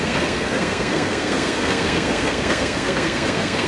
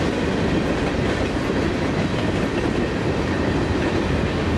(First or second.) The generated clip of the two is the first